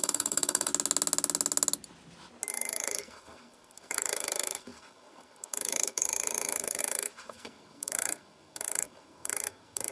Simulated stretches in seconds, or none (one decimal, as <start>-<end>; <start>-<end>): 0.0-0.7; 2.5-9.9